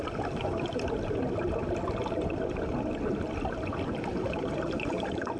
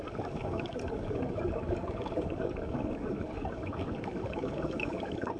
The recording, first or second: first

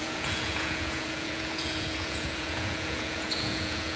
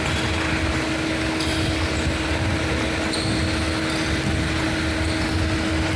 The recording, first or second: second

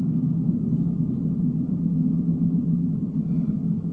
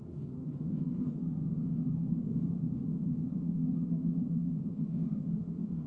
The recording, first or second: first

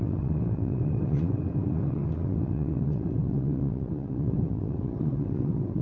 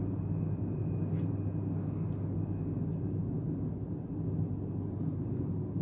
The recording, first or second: second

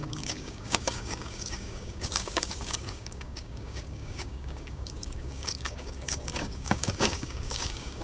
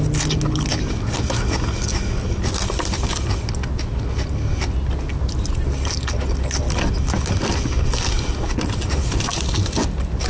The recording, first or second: second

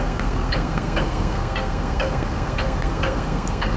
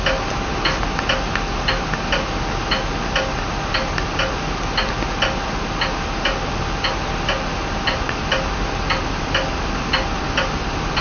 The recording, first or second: second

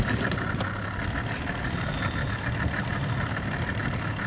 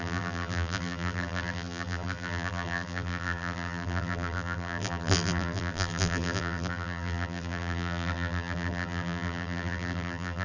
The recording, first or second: first